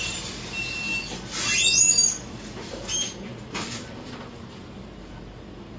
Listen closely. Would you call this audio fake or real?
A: real